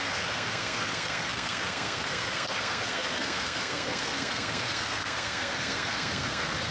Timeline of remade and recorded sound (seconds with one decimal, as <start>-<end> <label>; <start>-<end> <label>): 0.0-6.7 remade